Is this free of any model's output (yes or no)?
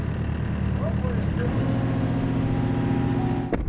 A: yes